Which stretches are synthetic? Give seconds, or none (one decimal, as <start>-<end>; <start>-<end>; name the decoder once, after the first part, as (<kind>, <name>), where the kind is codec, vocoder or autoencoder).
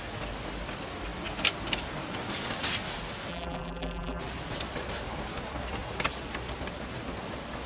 3.3-4.2 (vocoder, BigVGAN v2)